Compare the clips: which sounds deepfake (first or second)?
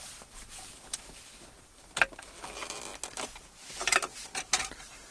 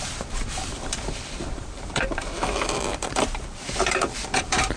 second